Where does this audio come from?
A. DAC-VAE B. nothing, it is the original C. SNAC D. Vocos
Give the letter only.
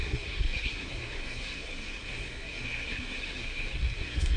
C